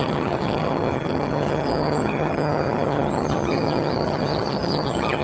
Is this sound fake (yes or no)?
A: yes